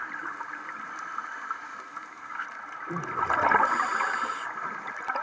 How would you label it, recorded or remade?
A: recorded